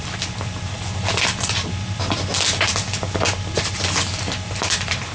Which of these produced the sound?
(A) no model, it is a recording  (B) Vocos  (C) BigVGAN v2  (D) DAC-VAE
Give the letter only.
A